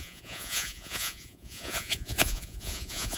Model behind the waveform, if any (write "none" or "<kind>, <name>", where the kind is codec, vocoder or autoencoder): vocoder, Vocos